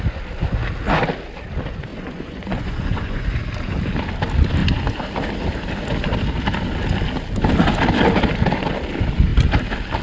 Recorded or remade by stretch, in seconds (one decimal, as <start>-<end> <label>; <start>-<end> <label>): 0.0-1.9 recorded; 1.9-3.4 remade; 3.4-10.0 recorded